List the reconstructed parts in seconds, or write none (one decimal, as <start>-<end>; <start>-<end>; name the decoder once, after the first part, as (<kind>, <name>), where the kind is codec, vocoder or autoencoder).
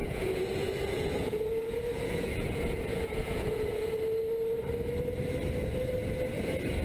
0.0-3.9 (vocoder, Vocos)